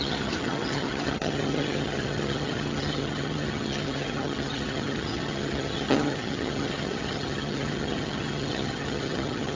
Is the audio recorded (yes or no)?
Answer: no